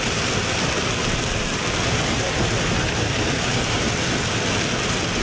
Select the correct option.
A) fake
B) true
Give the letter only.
B